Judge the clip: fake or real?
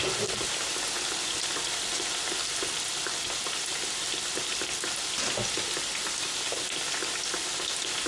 real